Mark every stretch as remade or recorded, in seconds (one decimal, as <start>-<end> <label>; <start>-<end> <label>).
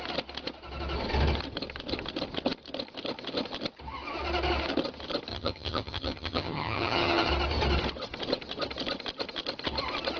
0.0-5.3 recorded; 5.3-7.3 remade; 7.3-10.2 recorded